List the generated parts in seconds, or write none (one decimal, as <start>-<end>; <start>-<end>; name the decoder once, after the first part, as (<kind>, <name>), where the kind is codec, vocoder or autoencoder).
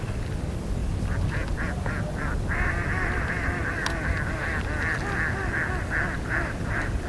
0.0-0.8 (vocoder, BigVGAN v2); 5.1-7.1